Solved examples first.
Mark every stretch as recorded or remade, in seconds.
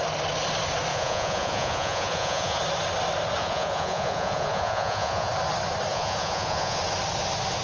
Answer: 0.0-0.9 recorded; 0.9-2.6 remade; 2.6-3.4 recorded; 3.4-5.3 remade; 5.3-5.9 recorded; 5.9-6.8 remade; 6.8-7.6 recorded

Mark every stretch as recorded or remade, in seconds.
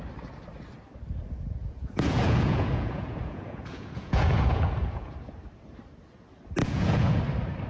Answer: 0.0-1.6 recorded; 1.6-5.1 remade; 5.1-6.6 recorded; 6.6-7.2 remade; 7.2-7.7 recorded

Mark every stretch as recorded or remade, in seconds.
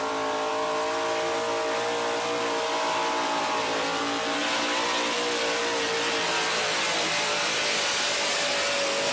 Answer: 0.0-9.1 recorded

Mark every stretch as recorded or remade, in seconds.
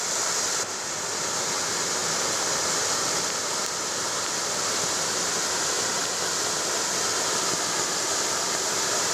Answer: 0.0-9.1 recorded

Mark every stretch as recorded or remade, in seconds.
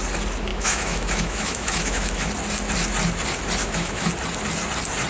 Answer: 0.0-0.5 recorded; 0.5-2.3 remade; 2.3-3.6 recorded; 3.6-4.1 remade; 4.1-5.1 recorded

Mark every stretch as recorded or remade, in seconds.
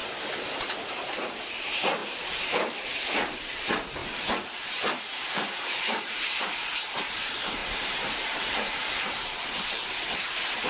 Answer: 0.0-0.6 recorded; 0.6-10.7 remade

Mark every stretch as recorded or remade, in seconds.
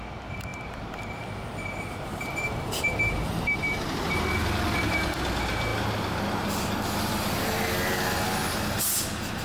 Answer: 0.0-0.5 recorded; 0.5-4.1 remade; 4.1-9.4 recorded